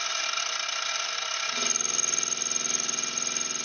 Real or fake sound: real